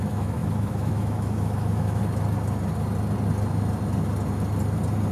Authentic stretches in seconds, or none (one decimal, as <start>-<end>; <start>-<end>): 2.0-5.1